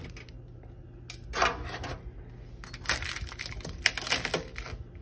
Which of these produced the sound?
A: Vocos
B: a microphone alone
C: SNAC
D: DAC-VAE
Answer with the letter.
B